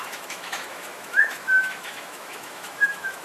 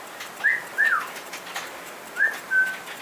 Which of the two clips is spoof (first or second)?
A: first